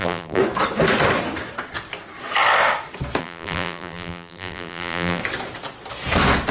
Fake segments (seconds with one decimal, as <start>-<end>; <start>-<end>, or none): 0.0-0.4; 3.2-5.2